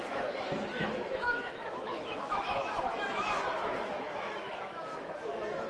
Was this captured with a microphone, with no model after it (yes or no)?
no